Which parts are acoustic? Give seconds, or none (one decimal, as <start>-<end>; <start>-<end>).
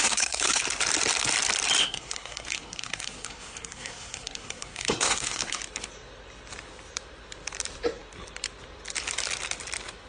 0.6-1.8; 5.6-10.1